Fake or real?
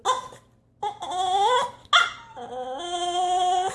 real